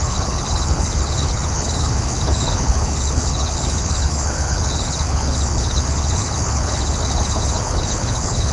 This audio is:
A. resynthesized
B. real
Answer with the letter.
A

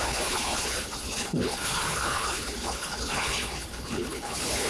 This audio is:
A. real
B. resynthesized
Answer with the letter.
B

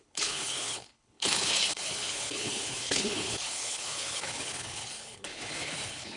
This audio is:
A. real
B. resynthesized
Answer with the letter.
B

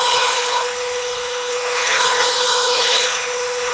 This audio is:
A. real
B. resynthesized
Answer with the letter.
B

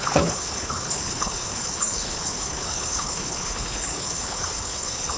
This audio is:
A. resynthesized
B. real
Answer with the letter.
A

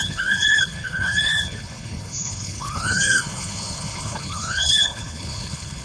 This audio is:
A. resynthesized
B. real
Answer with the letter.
A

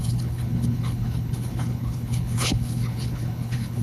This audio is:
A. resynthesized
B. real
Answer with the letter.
A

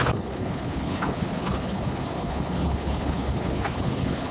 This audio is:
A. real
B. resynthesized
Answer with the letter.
B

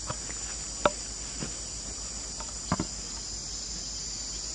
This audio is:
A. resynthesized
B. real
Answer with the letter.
B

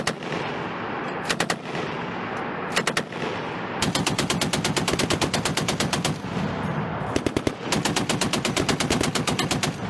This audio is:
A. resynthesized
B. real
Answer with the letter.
B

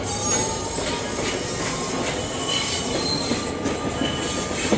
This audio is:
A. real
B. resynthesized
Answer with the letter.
A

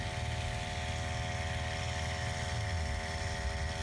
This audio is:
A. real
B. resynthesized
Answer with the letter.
A